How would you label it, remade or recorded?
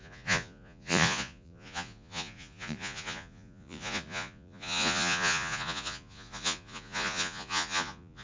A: remade